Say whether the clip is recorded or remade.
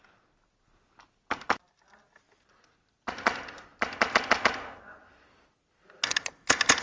recorded